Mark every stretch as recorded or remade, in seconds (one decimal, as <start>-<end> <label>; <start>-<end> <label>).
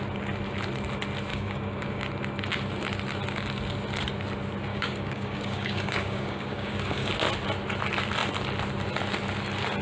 0.0-1.3 recorded; 1.3-2.1 remade; 2.1-4.7 recorded; 4.7-7.1 remade; 7.1-9.8 recorded